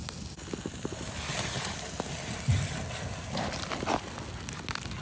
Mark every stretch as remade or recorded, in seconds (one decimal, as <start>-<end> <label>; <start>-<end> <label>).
0.0-5.0 recorded